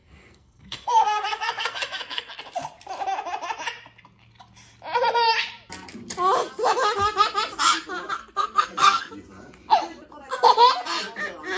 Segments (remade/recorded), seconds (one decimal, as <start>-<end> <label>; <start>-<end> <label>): 0.0-2.3 remade; 2.3-8.2 recorded; 8.2-9.1 remade; 9.1-11.6 recorded